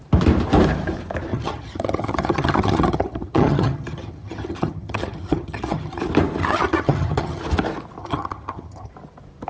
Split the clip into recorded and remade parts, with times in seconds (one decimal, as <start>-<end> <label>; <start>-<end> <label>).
0.0-1.3 recorded; 1.3-6.0 remade; 6.0-6.4 recorded; 6.4-7.4 remade; 7.4-8.0 recorded; 8.0-8.9 remade; 8.9-9.5 recorded